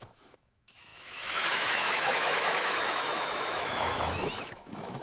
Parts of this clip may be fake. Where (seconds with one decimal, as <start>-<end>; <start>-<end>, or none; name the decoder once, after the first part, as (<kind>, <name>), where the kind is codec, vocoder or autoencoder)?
0.0-5.0 (autoencoder, DAC-VAE)

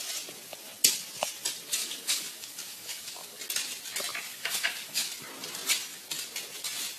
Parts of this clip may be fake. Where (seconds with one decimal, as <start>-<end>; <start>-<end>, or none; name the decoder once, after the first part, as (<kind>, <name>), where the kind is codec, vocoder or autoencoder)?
1.8-3.4 (codec, DAC); 4.3-5.1